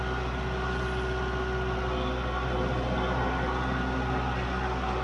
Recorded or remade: recorded